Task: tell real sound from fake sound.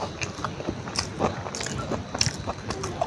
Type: real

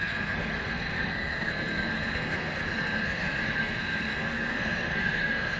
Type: fake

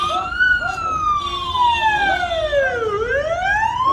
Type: real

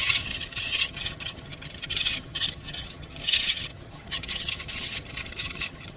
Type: fake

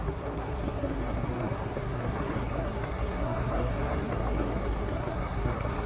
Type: fake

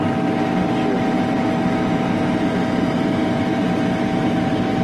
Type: real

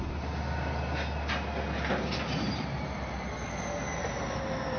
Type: real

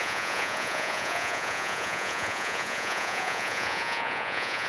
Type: fake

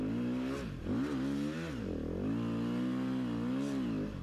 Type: real